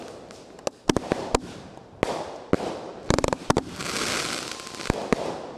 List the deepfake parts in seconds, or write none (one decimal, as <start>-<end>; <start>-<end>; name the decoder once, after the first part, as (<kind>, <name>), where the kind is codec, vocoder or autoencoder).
2.9-3.8 (vocoder, BigVGAN v2)